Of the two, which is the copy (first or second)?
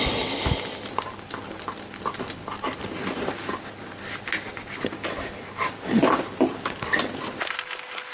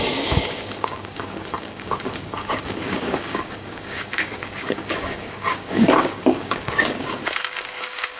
second